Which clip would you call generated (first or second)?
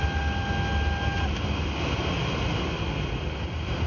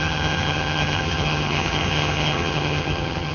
second